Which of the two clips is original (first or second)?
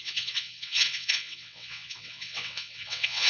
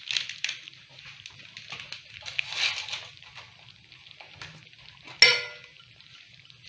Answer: second